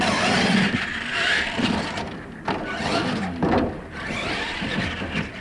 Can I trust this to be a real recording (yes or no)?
no